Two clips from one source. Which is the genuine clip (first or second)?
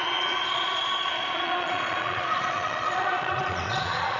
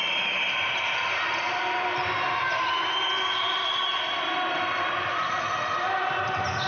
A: second